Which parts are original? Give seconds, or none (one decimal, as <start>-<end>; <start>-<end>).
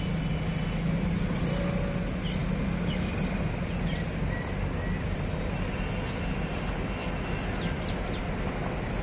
0.0-9.0